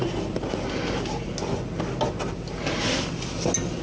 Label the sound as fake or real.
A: real